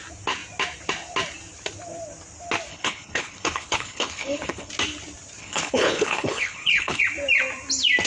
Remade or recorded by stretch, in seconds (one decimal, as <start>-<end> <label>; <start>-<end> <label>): 0.0-2.7 recorded; 2.7-4.7 remade; 4.7-5.4 recorded; 5.4-7.0 remade; 7.0-8.1 recorded